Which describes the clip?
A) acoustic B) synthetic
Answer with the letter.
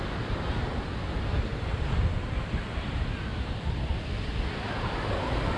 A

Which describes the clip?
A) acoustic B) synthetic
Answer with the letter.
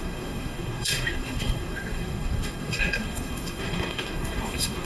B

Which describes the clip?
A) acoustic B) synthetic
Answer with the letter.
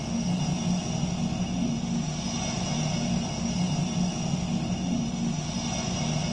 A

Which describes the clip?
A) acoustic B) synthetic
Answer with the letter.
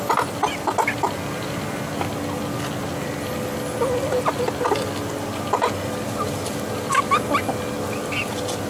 A